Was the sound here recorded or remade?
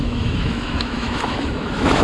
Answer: remade